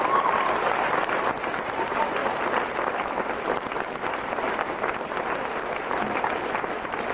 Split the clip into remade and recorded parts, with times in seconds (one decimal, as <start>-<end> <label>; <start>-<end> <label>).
0.0-7.1 recorded